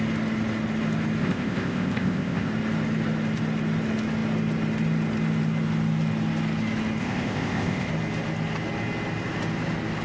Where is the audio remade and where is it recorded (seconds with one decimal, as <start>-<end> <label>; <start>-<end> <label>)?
0.0-1.2 recorded; 1.2-2.5 remade; 2.5-7.0 recorded; 7.0-7.9 remade; 7.9-10.0 recorded